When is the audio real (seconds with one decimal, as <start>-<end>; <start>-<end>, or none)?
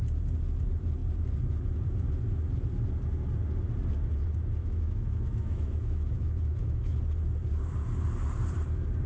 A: 0.0-4.6; 7.0-9.1